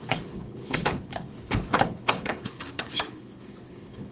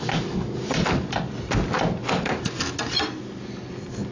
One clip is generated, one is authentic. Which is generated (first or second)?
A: first